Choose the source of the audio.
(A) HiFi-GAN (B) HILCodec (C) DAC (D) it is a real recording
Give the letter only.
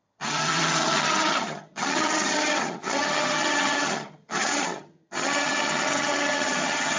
A